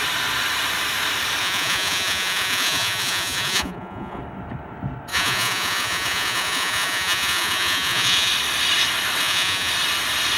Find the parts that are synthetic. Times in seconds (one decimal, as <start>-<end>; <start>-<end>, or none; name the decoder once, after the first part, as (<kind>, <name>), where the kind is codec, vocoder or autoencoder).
1.4-4.2 (vocoder, Vocos); 5.1-8.3; 9.2-9.7